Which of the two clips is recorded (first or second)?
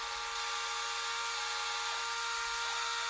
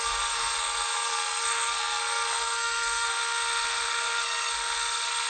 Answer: first